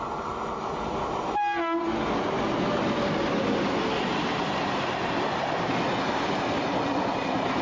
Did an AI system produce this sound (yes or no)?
no